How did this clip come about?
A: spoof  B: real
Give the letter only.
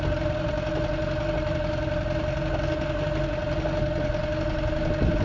B